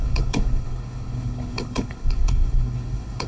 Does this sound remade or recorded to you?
remade